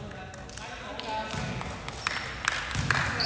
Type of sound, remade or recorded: recorded